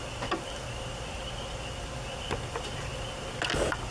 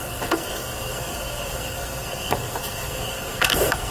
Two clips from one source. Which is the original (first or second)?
first